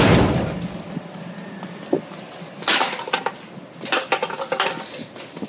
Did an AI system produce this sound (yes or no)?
no